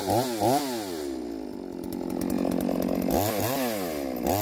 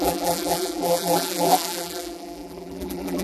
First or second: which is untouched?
first